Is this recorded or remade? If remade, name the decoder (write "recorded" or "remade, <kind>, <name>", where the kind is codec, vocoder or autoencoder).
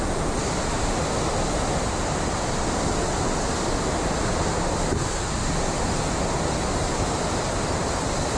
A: recorded